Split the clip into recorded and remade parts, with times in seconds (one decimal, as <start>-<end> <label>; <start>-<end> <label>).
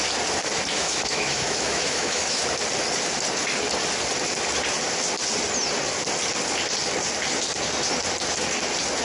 0.0-0.7 recorded; 0.7-2.4 remade; 2.4-9.0 recorded